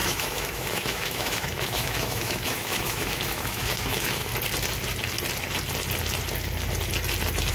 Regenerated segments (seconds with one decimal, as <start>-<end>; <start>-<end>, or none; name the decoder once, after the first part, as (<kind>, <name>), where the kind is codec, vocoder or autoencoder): 0.0-4.3 (autoencoder, DAC-VAE)